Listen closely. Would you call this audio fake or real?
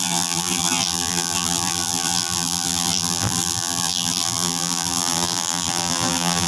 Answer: fake